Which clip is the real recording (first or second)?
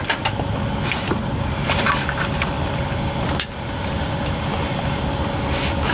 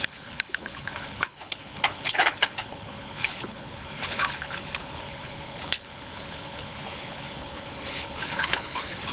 first